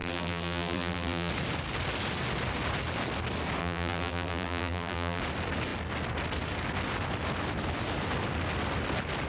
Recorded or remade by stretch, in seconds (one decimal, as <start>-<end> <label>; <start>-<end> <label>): 0.0-1.3 remade; 1.3-3.6 recorded; 3.6-5.2 remade; 5.2-9.3 recorded